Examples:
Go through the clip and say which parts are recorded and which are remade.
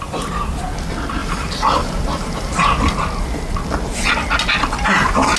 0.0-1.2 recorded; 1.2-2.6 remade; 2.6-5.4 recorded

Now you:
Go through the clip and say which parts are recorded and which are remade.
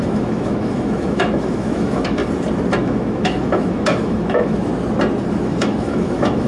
0.0-2.2 remade; 2.2-2.8 recorded; 2.8-4.7 remade; 4.7-5.3 recorded; 5.3-6.5 remade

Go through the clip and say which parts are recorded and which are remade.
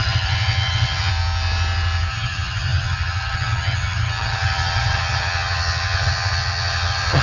0.0-1.1 remade; 1.1-2.1 recorded; 2.1-7.2 remade